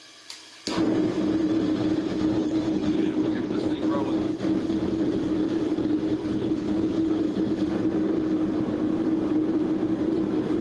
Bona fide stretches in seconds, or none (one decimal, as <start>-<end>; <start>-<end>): 0.0-2.4; 3.8-6.2; 7.2-10.6